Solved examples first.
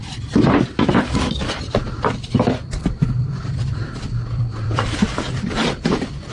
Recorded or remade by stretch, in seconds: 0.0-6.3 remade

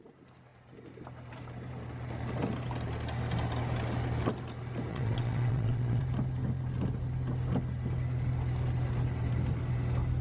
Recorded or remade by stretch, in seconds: 0.0-4.9 recorded; 4.9-6.0 remade; 6.0-10.2 recorded

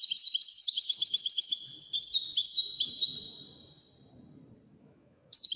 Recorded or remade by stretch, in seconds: 0.0-1.5 remade; 1.5-4.8 recorded; 4.8-5.6 remade